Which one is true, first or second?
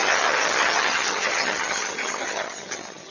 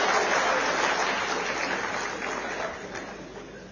second